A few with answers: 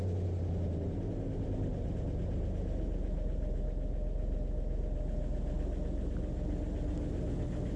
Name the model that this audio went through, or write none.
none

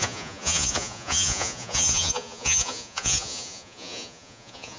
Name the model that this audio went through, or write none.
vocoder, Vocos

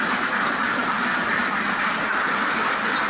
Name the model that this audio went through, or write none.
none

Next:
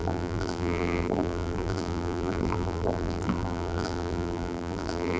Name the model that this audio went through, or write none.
vocoder, BigVGAN v2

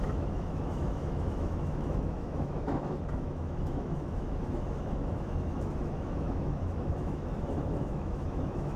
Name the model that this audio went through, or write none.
autoencoder, DAC-VAE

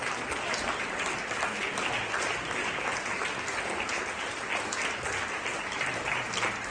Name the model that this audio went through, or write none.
none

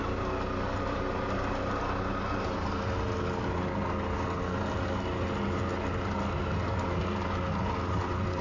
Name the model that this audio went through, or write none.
none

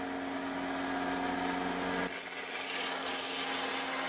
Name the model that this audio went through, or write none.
none